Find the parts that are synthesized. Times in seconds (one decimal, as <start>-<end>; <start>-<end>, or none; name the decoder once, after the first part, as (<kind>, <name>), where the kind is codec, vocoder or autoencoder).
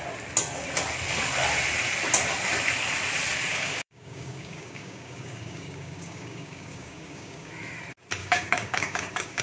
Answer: 3.5-7.5 (codec, DAC); 8.2-9.4